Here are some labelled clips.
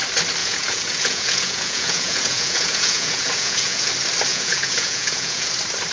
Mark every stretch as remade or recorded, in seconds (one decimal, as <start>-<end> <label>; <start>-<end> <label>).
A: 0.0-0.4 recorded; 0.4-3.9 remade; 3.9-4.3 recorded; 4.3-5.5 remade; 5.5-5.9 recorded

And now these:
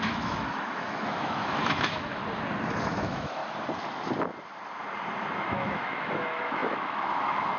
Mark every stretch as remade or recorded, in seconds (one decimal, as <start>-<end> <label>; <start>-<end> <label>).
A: 0.0-2.2 remade; 2.2-2.8 recorded; 2.8-3.4 remade; 3.4-5.5 recorded; 5.5-7.6 remade

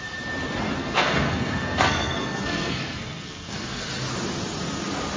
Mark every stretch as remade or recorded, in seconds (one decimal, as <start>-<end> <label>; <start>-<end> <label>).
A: 0.0-0.8 recorded; 0.8-3.9 remade; 3.9-5.2 recorded

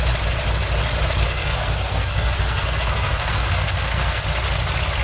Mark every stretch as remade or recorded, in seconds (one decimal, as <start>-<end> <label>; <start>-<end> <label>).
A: 0.0-1.2 recorded; 1.2-4.2 remade; 4.2-5.0 recorded

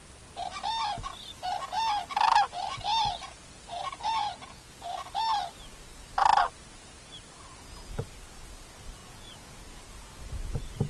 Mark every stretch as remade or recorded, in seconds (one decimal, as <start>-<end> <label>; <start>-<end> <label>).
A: 0.0-4.2 recorded; 4.2-4.7 remade; 4.7-9.0 recorded; 9.0-9.6 remade; 9.6-10.9 recorded

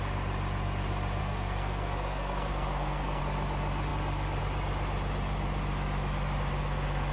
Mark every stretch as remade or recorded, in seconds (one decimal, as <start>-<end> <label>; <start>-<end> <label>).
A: 0.0-1.2 recorded; 1.2-3.2 remade; 3.2-7.1 recorded